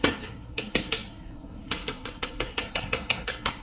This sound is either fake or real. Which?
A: fake